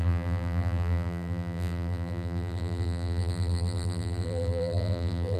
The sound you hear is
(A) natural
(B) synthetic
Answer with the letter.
B